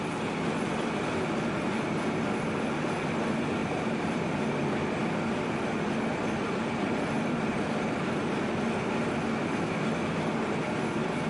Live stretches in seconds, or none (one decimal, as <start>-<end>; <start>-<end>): 0.0-3.6; 4.2-6.1; 8.2-11.3